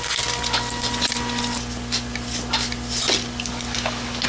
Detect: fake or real real